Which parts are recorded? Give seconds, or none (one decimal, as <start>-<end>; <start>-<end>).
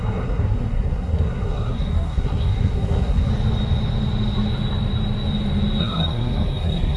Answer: 3.3-5.8